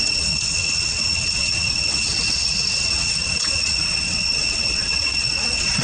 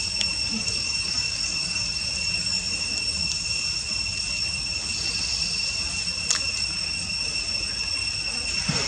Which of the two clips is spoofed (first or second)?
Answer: first